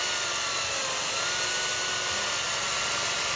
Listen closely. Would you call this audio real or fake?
real